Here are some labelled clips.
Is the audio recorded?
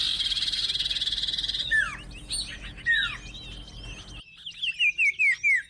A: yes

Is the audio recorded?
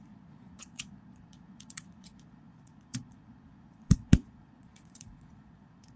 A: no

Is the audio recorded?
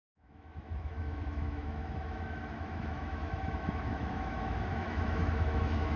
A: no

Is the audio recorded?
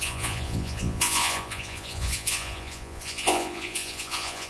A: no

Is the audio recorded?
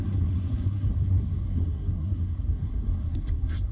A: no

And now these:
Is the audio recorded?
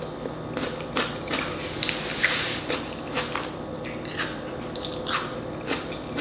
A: yes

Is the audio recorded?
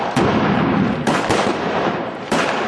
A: no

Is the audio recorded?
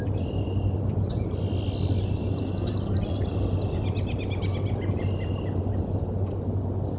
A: yes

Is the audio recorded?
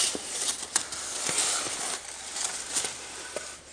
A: yes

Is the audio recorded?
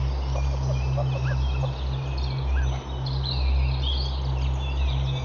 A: yes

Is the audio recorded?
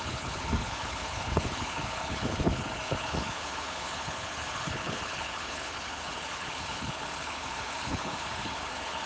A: no